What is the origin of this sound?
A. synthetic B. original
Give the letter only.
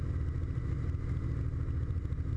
B